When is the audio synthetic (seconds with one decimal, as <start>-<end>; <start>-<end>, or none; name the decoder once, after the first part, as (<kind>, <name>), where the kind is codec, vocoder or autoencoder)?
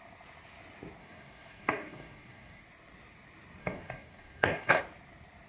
1.0-2.6 (codec, DAC); 3.6-4.8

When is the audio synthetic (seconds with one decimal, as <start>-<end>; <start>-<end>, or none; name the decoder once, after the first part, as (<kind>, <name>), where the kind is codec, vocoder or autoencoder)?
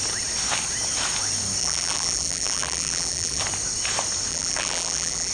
1.6-3.4 (vocoder, BigVGAN v2); 4.3-5.3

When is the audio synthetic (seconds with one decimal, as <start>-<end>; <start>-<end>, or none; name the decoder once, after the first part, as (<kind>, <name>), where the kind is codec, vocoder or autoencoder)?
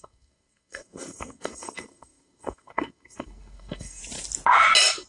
0.0-4.0 (codec, SNAC)